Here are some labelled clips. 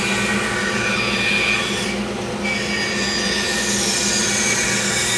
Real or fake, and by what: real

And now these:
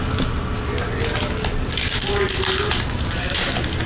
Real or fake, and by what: real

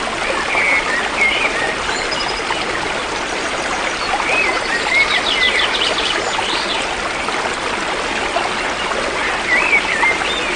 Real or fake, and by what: real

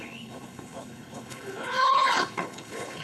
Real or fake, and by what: fake, codec, HILCodec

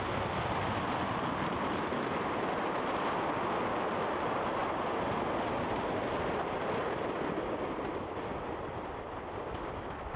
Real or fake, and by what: real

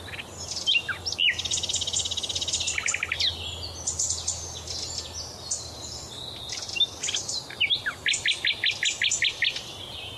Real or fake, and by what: real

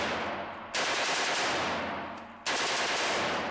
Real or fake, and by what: real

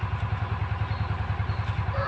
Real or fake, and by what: real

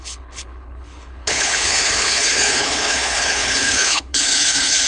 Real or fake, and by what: fake, codec, HILCodec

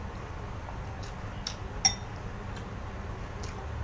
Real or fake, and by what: real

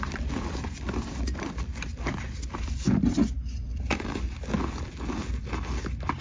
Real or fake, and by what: real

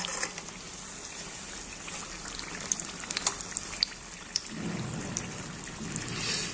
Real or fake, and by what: real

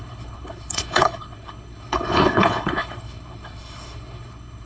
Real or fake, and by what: fake, codec, HILCodec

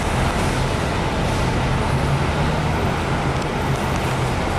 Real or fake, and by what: real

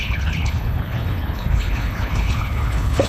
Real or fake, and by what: fake, codec, HILCodec